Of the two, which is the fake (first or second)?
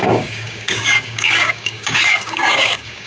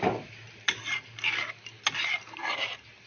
first